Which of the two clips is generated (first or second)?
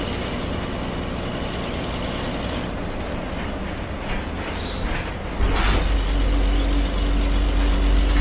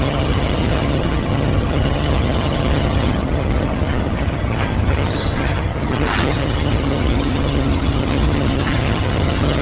second